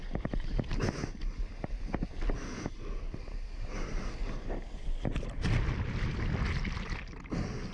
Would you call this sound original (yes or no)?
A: yes